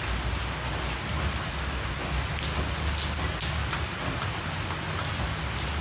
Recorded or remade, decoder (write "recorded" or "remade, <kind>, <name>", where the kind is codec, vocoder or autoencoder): recorded